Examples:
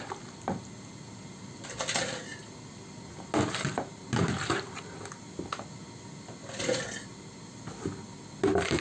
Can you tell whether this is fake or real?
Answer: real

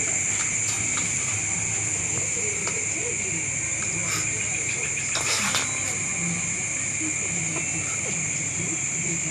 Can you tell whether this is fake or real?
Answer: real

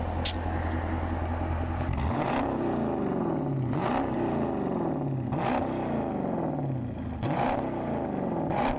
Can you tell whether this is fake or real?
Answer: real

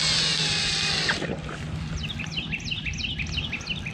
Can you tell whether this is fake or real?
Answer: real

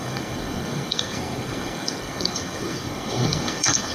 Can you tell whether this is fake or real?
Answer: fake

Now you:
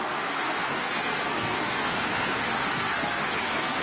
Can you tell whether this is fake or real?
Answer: fake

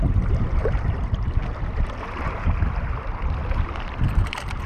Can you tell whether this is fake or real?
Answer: real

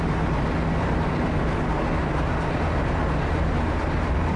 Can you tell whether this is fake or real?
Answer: real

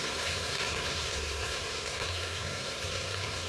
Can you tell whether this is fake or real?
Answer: fake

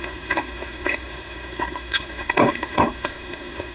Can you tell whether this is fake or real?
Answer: fake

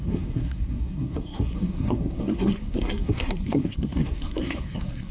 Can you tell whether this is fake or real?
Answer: fake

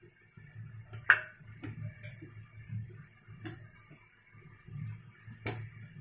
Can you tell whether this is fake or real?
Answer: real